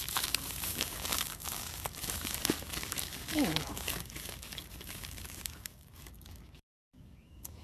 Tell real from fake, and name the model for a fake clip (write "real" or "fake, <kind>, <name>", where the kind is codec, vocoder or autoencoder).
fake, codec, DAC